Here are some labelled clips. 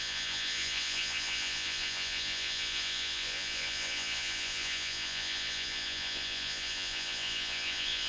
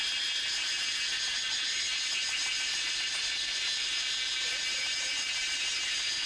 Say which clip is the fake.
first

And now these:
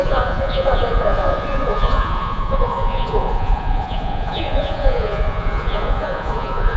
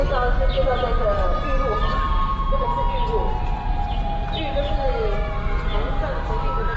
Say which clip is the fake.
first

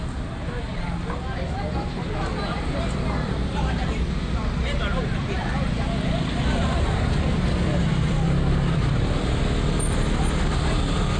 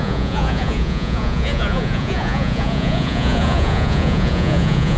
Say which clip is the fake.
second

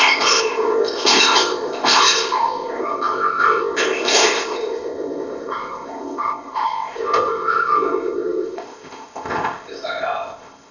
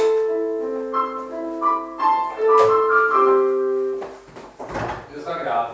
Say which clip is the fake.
first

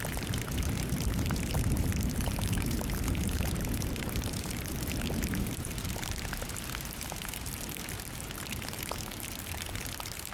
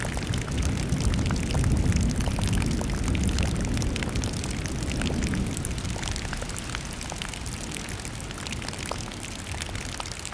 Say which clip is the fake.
first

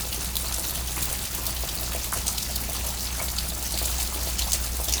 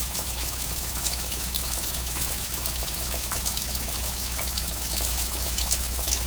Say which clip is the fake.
second